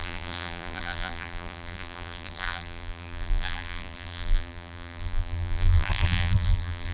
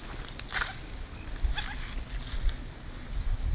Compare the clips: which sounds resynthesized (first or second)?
first